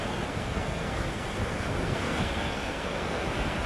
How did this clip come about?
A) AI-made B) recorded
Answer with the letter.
A